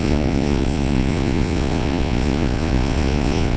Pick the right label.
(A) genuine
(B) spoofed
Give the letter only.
B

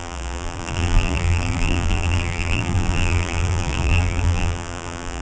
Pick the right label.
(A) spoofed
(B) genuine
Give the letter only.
A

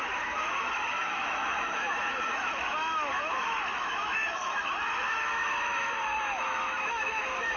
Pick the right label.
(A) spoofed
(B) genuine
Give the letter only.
A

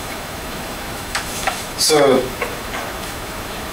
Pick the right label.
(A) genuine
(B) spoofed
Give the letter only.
B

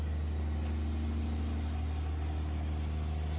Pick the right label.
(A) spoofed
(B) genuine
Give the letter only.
B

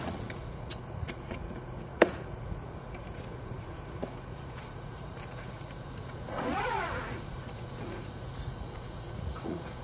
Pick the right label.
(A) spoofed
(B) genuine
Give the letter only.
A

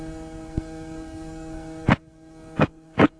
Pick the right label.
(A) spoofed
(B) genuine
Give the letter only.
A